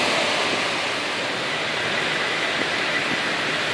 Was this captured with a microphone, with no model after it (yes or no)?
yes